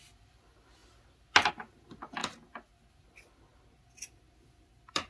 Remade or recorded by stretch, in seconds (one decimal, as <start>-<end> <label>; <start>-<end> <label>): 0.0-5.1 recorded